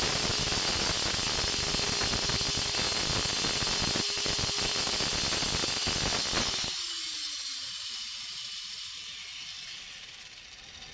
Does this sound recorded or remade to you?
recorded